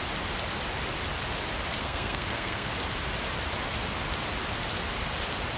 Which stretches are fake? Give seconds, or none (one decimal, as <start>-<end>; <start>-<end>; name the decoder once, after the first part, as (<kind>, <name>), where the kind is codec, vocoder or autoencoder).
1.8-2.7 (codec, SNAC)